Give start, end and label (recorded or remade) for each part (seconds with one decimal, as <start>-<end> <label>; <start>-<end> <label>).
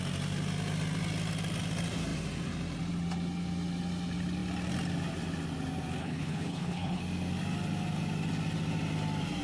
0.0-6.0 recorded; 6.0-7.0 remade; 7.0-9.4 recorded